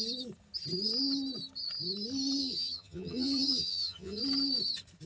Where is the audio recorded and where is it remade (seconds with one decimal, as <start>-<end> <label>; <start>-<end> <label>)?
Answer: 0.0-2.4 recorded; 2.4-4.2 remade; 4.2-5.1 recorded